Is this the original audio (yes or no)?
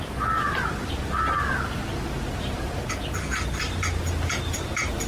yes